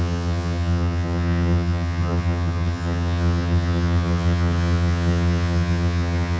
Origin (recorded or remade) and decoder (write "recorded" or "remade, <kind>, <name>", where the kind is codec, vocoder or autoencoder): remade, vocoder, HiFi-GAN